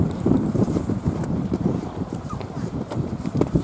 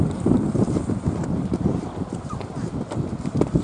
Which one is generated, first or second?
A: first